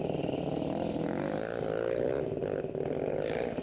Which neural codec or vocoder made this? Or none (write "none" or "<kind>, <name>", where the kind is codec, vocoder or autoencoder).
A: none